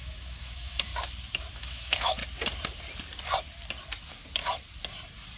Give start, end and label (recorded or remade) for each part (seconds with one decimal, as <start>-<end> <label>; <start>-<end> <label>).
0.0-0.9 remade; 0.9-1.5 recorded; 1.5-2.2 remade; 2.2-5.4 recorded